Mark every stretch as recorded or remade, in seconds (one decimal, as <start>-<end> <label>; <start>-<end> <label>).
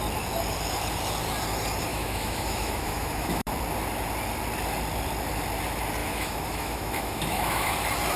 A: 0.0-1.9 recorded; 1.9-3.5 remade; 3.5-6.0 recorded; 6.0-7.7 remade; 7.7-8.2 recorded